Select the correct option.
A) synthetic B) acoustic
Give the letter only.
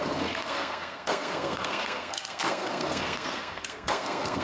A